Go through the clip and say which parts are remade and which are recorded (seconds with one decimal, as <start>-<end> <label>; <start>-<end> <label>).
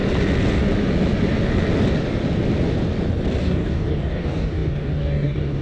0.0-3.4 recorded; 3.4-5.6 remade